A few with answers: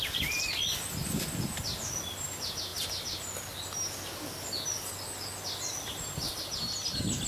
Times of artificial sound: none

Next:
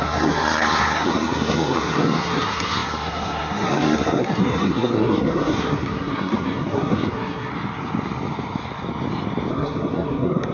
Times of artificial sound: 0.0-7.5; 9.5-10.5

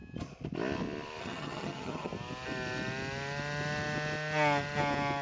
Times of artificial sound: 1.2-2.1

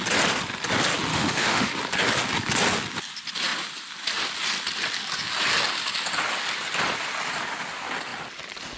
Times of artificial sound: 1.1-1.7

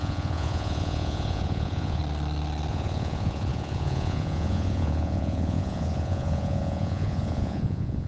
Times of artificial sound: 0.0-2.0; 2.7-8.1